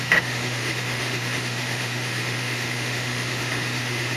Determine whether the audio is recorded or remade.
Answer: remade